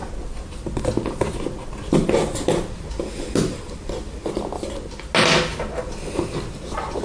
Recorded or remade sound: recorded